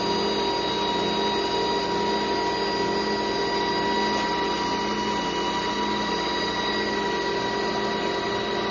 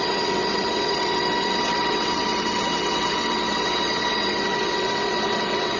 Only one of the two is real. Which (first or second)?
first